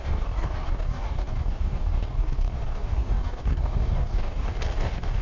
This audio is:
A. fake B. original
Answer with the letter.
A